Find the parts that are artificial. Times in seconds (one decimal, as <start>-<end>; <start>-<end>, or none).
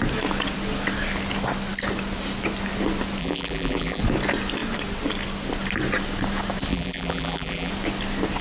3.2-4.0; 6.7-7.7